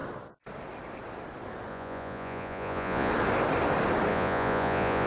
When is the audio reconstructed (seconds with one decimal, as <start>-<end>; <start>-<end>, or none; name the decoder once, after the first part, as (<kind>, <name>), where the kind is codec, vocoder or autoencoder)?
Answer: 1.7-3.1 (vocoder, Vocos); 4.1-5.1